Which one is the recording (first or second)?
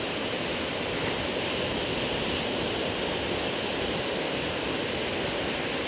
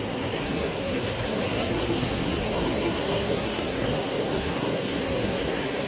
first